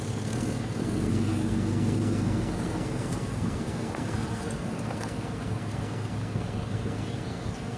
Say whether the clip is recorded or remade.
remade